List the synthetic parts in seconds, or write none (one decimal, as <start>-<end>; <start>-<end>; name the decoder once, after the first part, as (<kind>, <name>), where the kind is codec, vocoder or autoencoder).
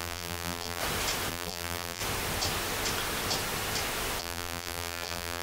0.0-0.8 (vocoder, BigVGAN v2); 1.3-2.0; 4.2-5.4